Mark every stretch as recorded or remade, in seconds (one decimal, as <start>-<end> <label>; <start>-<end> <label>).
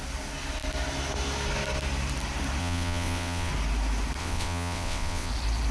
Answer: 0.0-2.6 recorded; 2.6-3.5 remade; 3.5-4.2 recorded; 4.2-5.3 remade; 5.3-5.7 recorded